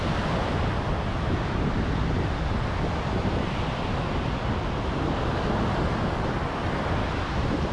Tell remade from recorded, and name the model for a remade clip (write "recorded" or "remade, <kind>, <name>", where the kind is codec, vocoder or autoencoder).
recorded